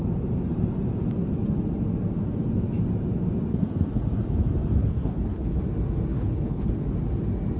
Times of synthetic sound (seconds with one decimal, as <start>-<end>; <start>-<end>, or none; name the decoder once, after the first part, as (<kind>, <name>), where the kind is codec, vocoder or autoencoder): 4.8-5.6 (codec, HILCodec); 6.1-6.7